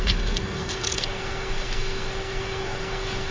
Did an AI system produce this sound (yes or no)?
yes